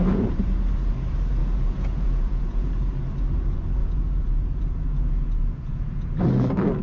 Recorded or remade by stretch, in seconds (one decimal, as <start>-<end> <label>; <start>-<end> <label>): 0.0-1.4 recorded; 1.4-2.7 remade; 2.7-3.8 recorded; 3.8-6.2 remade; 6.2-6.8 recorded